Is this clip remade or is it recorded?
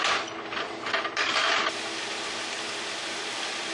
recorded